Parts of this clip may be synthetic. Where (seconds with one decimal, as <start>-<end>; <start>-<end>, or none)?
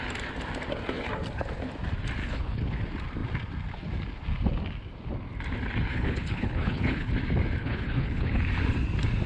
2.2-2.8; 5.9-7.1; 7.6-8.4